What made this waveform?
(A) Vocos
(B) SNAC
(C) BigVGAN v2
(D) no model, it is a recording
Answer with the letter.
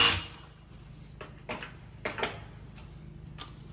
D